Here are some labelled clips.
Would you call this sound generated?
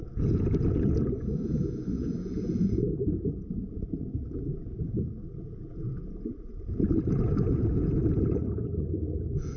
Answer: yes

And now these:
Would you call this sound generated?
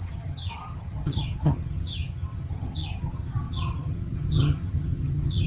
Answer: yes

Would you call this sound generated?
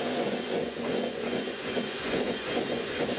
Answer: yes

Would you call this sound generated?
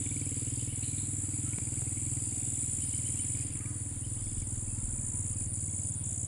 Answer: no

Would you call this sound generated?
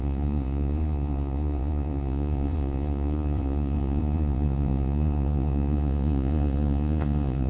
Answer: yes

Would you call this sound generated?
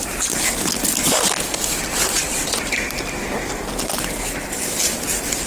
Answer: no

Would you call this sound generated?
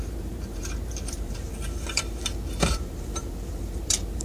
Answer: yes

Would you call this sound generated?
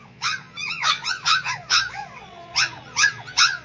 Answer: yes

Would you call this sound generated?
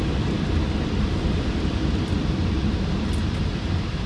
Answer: yes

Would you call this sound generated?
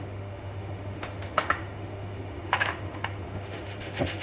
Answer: yes